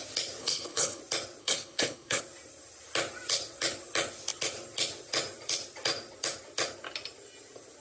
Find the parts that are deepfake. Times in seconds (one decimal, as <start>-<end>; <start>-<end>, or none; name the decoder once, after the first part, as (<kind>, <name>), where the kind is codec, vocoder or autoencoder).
0.4-1.0 (codec, HILCodec); 1.4-2.2

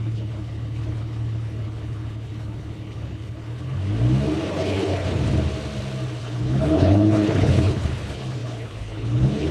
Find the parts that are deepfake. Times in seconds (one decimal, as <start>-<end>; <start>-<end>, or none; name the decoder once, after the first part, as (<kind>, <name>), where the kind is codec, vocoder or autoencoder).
0.0-3.8 (codec, HILCodec); 4.5-5.2; 6.2-9.5

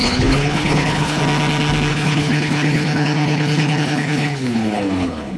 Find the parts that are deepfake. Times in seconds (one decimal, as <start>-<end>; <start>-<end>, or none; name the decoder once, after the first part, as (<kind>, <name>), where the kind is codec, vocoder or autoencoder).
0.0-1.2 (codec, HILCodec); 1.9-5.4

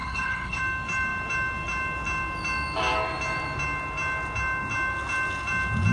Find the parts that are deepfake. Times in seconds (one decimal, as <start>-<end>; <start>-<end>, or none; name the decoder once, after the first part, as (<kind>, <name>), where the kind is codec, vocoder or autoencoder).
0.0-0.6 (codec, HILCodec)